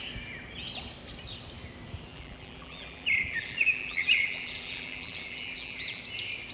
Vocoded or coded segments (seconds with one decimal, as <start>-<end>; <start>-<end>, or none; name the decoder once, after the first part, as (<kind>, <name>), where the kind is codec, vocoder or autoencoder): 2.1-6.0 (vocoder, BigVGAN v2)